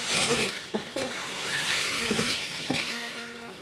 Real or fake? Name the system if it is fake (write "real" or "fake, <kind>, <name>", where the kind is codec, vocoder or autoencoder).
fake, codec, SNAC